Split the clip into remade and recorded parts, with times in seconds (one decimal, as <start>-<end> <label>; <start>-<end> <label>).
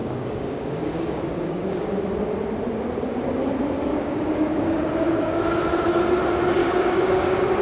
0.0-2.0 remade; 2.0-3.9 recorded; 3.9-5.4 remade; 5.4-6.6 recorded; 6.6-7.6 remade